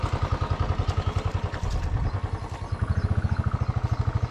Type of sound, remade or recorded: recorded